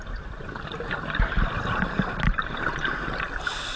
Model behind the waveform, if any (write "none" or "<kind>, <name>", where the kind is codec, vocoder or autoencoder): none